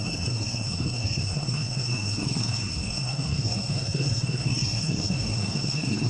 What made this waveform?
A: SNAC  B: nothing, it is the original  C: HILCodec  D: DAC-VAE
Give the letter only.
A